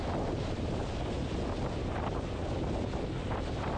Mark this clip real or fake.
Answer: real